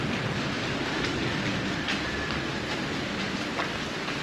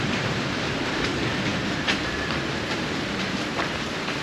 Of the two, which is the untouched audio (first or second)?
first